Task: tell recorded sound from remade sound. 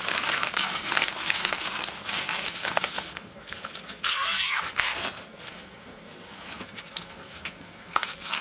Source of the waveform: remade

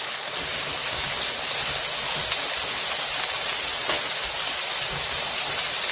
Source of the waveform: recorded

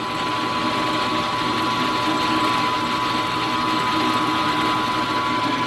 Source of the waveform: recorded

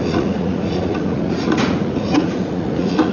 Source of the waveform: remade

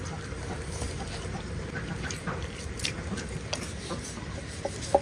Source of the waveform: recorded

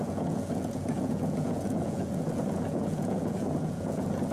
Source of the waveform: remade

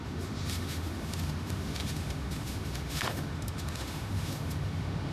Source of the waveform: remade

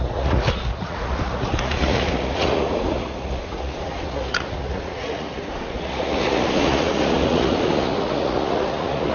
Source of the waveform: remade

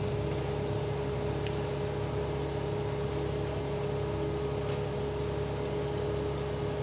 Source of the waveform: recorded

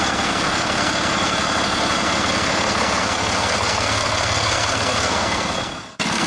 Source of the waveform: remade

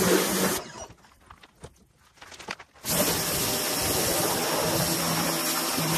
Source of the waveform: recorded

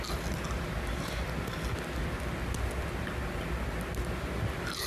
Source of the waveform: recorded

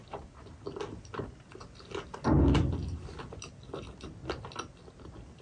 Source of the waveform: recorded